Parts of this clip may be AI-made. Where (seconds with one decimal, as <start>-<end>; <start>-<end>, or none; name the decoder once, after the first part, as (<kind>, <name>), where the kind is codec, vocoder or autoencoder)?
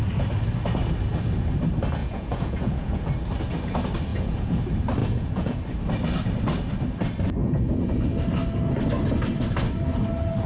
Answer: 2.0-3.0 (vocoder, Vocos); 4.1-4.6; 5.0-5.6; 7.4-8.1